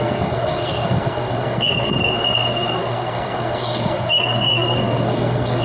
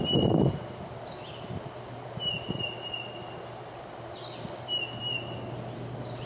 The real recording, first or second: second